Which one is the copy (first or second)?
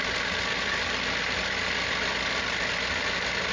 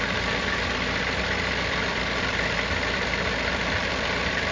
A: second